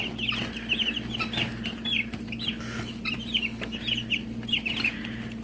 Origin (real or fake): real